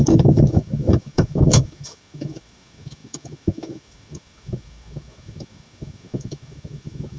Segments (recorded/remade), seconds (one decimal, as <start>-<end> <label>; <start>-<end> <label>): 0.0-7.2 remade